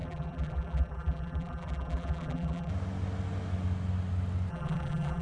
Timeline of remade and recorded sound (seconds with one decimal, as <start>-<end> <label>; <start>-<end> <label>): 0.0-2.7 remade; 2.7-4.5 recorded; 4.5-5.2 remade